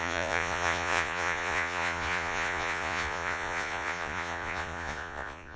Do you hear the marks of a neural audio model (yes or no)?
yes